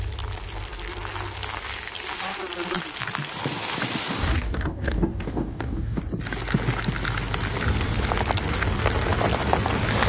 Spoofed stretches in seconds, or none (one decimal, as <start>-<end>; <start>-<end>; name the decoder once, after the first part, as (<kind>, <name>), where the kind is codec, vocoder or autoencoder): 4.2-6.0 (codec, DAC)